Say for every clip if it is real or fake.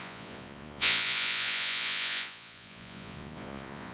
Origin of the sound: fake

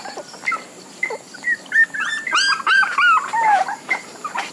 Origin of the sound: fake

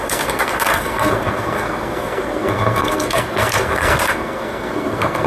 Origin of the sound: fake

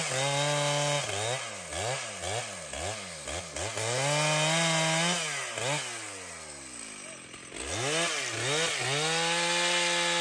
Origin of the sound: real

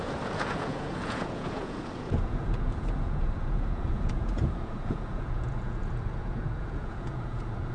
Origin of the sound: fake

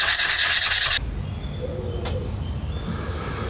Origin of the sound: real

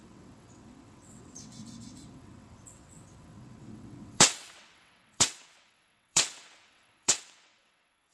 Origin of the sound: fake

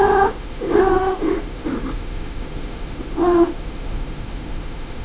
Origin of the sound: fake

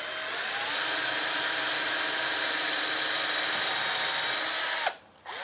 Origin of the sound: real